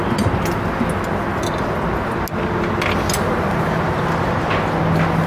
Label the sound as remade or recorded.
recorded